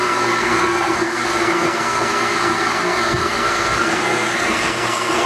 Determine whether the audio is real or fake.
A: fake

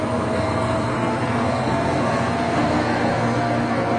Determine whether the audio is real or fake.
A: fake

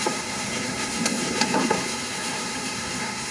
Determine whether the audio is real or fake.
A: fake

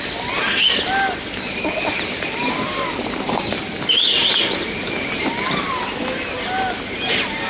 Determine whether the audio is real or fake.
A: real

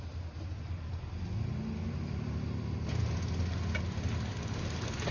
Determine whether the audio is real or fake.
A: real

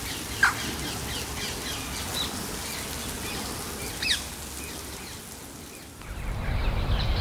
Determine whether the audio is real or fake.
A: real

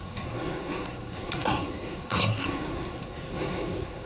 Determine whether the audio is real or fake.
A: fake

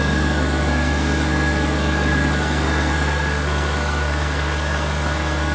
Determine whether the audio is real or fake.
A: fake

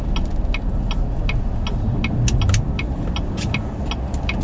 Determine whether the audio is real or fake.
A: real